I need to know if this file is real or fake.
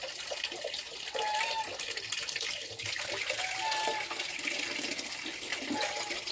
real